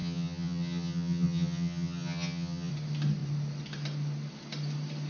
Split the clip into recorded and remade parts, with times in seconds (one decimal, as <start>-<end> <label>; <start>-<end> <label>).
0.0-2.7 remade; 2.7-5.1 recorded